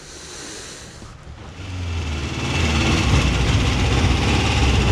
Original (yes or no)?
yes